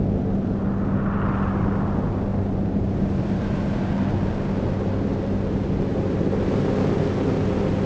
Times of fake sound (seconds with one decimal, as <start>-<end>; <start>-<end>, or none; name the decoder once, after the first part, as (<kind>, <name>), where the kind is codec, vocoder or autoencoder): 2.3-3.9 (vocoder, BigVGAN v2); 5.9-6.6